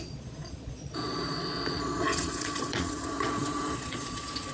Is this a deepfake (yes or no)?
yes